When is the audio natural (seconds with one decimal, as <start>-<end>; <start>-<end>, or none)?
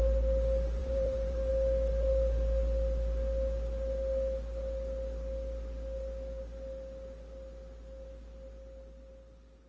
0.0-0.8; 1.5-9.7